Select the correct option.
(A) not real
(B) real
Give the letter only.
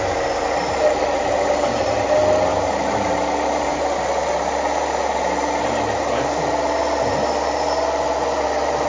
B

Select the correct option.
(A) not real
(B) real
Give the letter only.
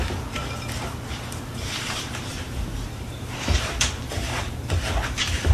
A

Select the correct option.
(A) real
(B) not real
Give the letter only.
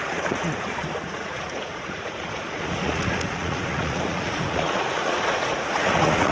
B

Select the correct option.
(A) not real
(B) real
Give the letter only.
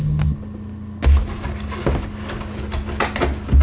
B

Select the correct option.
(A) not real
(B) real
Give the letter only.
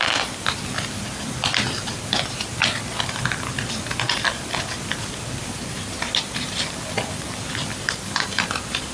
A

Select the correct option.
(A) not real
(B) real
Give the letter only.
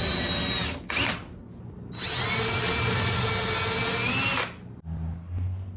B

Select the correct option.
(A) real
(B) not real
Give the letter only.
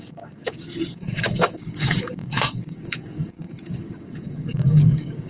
B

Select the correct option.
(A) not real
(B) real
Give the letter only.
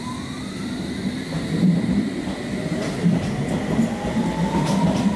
B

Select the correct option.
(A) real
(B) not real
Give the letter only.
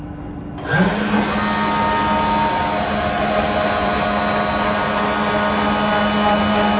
A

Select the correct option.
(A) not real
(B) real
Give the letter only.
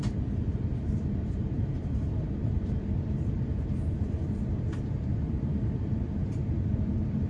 A